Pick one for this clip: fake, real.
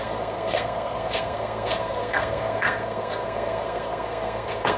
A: fake